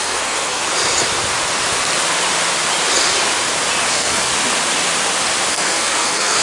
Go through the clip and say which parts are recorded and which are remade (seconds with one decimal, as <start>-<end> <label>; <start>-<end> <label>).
0.0-0.6 remade; 0.6-3.9 recorded; 3.9-4.3 remade; 4.3-5.5 recorded; 5.5-6.4 remade

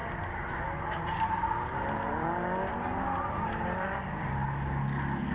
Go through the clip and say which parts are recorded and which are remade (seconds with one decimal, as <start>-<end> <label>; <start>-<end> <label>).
0.0-5.3 recorded

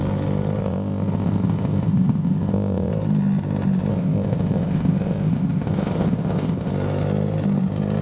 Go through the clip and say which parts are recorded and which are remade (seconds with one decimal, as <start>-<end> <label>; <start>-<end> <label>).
0.0-0.6 recorded; 0.6-2.9 remade; 2.9-3.9 recorded; 3.9-6.7 remade; 6.7-8.0 recorded

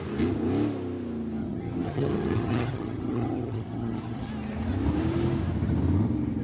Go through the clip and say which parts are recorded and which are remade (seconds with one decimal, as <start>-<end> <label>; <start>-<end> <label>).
0.0-1.4 recorded; 1.4-4.3 remade; 4.3-6.4 recorded

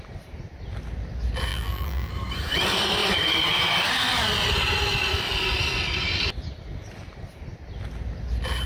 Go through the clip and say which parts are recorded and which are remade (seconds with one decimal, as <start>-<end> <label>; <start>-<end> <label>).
0.0-1.5 recorded; 1.5-2.1 remade; 2.1-8.7 recorded

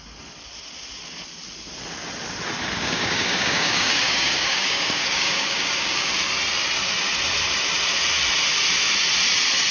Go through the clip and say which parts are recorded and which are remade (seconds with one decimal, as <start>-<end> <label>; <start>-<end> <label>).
0.0-2.8 recorded; 2.8-6.1 remade; 6.1-9.7 recorded

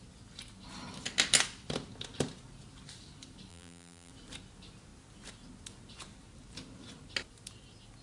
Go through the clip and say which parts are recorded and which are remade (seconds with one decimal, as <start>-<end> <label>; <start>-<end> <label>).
0.0-3.5 recorded; 3.5-4.1 remade; 4.1-8.0 recorded

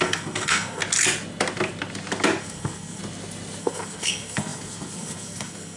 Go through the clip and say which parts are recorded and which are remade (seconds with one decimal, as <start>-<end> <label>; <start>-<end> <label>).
0.0-0.8 remade; 0.8-2.4 recorded; 2.4-3.0 remade; 3.0-3.6 recorded; 3.6-5.8 remade